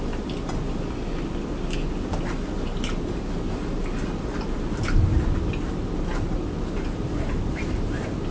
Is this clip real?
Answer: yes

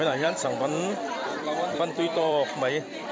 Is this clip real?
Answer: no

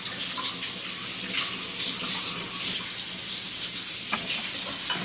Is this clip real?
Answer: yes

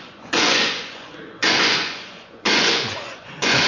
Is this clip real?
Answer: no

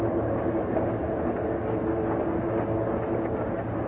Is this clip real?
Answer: yes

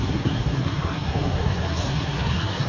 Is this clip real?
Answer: no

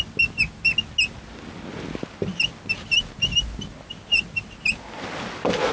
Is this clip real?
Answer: yes